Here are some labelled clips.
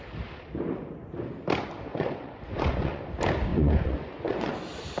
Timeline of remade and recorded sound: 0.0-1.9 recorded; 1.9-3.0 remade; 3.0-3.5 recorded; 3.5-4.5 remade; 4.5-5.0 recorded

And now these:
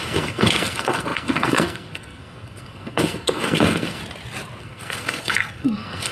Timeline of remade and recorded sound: 0.0-4.0 remade; 4.0-4.6 recorded; 4.6-6.1 remade

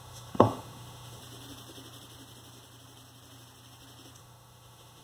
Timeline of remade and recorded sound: 0.0-1.2 remade; 1.2-4.2 recorded; 4.2-5.0 remade

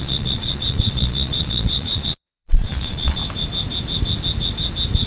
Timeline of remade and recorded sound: 0.0-3.2 remade; 3.2-5.1 recorded

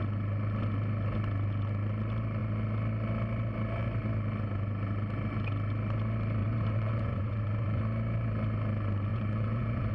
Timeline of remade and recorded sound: 0.0-6.4 recorded; 6.4-7.8 remade; 7.8-9.1 recorded; 9.1-9.9 remade

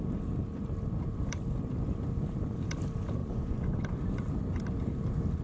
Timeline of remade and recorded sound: 0.0-3.2 recorded; 3.2-3.8 remade; 3.8-5.4 recorded

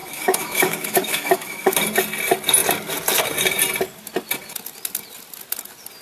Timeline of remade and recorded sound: 0.0-1.7 remade; 1.7-6.0 recorded